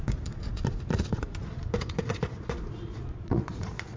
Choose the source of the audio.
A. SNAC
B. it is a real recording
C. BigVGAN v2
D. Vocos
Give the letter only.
D